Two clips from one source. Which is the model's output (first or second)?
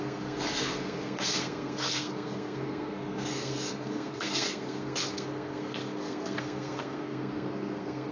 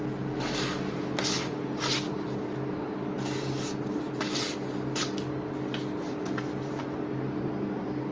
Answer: first